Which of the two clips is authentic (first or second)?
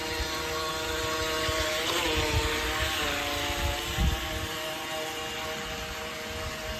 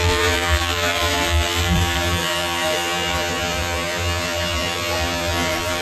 first